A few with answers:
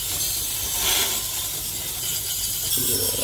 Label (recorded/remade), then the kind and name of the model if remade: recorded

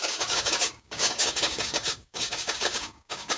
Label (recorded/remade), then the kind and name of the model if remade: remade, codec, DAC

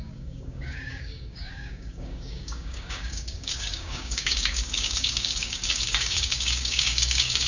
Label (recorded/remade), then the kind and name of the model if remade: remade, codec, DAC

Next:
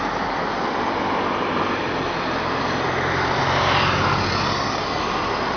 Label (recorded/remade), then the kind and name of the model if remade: recorded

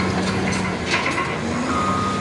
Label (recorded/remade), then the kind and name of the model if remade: recorded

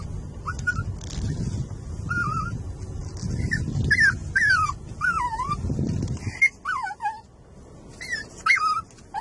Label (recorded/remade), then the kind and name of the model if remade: recorded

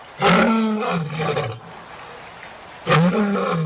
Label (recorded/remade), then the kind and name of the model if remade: recorded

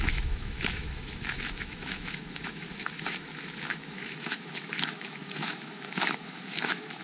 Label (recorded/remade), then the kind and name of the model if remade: remade, autoencoder, DAC-VAE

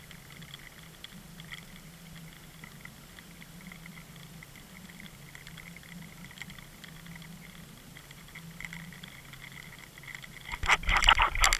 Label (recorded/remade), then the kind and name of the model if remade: recorded